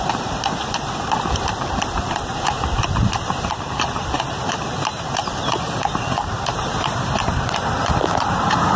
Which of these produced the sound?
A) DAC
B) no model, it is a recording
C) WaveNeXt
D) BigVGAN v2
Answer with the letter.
D